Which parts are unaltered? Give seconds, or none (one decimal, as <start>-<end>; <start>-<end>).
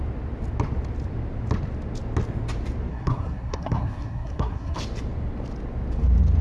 0.0-2.9; 4.8-6.4